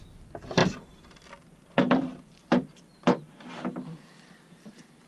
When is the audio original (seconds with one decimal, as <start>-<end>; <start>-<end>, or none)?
0.6-2.2